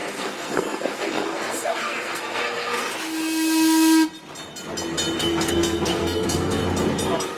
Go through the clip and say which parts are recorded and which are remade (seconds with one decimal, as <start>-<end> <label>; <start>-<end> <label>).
0.0-2.9 remade; 2.9-5.2 recorded; 5.2-6.6 remade; 6.6-7.4 recorded